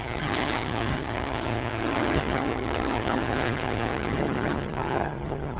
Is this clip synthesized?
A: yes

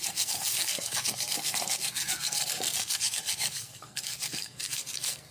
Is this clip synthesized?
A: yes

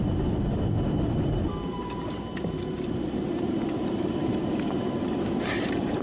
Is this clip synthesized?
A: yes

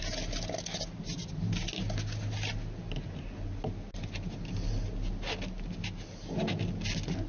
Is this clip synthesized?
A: no